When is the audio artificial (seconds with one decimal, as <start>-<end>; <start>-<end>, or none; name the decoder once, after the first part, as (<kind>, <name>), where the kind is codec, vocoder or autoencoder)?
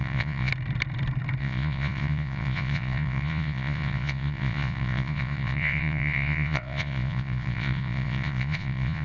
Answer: 0.0-0.5 (vocoder, Vocos); 1.4-9.0